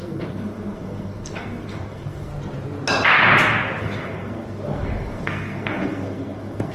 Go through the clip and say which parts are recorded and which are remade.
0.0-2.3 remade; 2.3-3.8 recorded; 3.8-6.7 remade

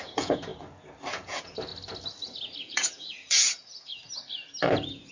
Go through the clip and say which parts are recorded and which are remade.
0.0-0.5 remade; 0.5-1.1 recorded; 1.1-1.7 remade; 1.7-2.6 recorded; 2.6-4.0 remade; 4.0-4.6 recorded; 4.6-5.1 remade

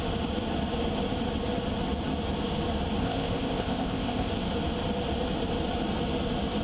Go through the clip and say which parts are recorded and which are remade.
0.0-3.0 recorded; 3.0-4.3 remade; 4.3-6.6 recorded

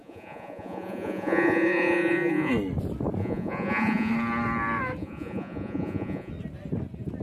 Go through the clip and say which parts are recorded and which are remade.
0.0-2.5 remade; 2.5-3.2 recorded; 3.2-4.1 remade; 4.1-5.0 recorded; 5.0-6.3 remade; 6.3-7.2 recorded